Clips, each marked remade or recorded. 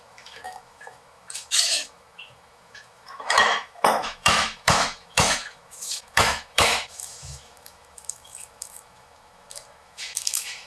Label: remade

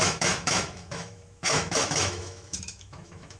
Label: remade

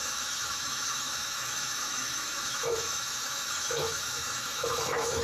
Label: remade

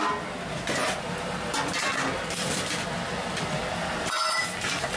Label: recorded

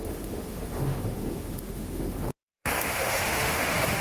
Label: remade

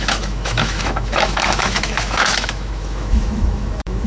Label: remade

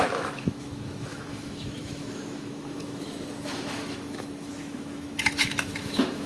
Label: remade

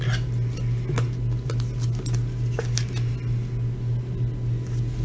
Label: recorded